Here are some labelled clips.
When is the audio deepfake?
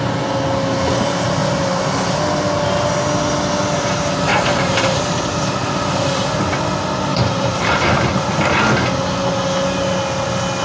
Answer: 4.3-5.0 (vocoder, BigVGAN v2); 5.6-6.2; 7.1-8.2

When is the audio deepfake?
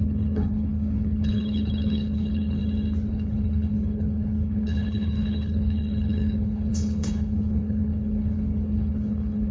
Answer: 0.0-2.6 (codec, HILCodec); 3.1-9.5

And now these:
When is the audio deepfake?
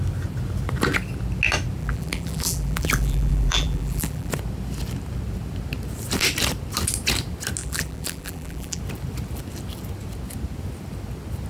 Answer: 1.8-4.3 (vocoder, BigVGAN v2); 7.6-8.8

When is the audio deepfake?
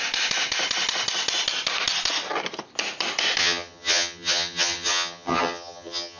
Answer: 3.4-6.2 (vocoder, HiFi-GAN)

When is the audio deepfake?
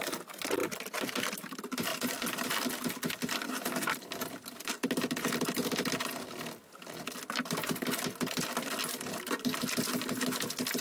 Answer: 0.6-1.1 (vocoder, BigVGAN v2); 1.9-5.3; 6.6-7.7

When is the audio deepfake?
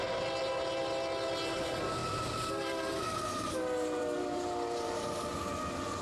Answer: 2.0-5.4 (vocoder, BigVGAN v2)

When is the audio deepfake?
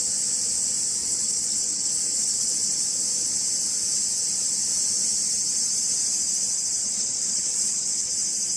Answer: 1.0-2.8 (vocoder, WaveNeXt); 6.8-8.1